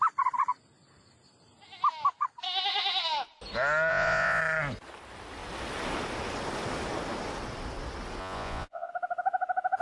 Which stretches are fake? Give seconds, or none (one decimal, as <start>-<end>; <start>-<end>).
3.9-4.4; 8.2-8.9